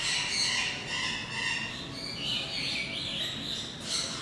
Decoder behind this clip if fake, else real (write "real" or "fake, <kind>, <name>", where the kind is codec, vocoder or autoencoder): real